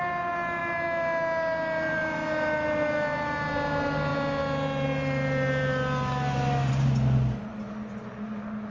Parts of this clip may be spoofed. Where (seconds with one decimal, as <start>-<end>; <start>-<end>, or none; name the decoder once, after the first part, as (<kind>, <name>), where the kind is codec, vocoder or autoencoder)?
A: none